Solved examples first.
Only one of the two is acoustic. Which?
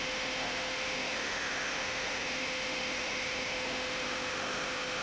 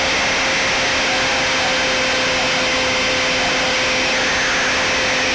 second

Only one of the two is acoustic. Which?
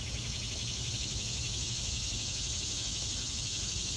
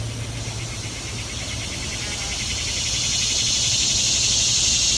second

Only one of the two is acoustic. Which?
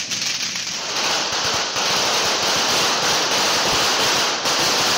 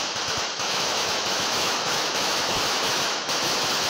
first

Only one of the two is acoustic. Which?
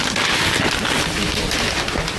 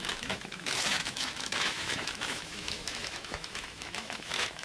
first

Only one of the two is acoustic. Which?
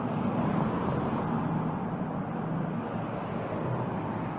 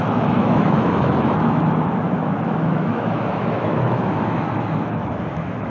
first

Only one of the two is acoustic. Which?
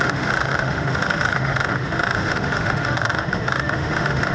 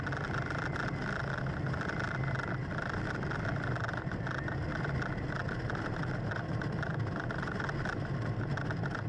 second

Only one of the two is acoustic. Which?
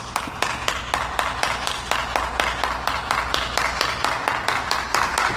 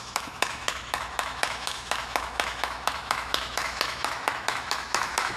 first